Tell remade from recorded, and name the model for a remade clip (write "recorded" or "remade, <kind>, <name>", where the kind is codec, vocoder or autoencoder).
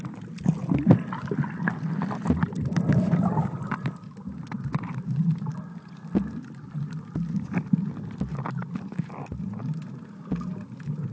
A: recorded